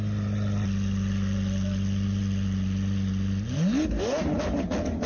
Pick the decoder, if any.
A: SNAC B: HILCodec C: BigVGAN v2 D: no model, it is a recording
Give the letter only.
D